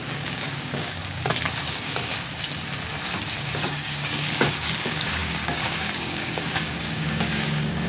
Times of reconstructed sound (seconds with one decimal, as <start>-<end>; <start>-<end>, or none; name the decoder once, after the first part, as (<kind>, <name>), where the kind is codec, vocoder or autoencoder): 0.0-1.0 (codec, DAC); 1.6-2.1; 3.5-7.9